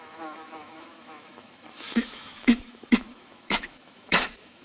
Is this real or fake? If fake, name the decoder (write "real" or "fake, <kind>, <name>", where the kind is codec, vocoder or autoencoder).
fake, autoencoder, DAC-VAE